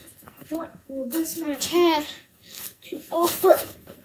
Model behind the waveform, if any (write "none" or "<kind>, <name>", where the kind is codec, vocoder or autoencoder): codec, SNAC